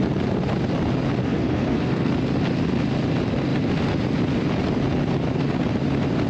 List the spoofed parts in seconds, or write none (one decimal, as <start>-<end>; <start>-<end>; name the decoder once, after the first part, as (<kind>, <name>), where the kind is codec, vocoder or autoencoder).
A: 1.2-2.1 (codec, SNAC)